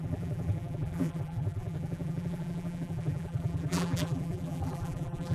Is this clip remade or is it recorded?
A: remade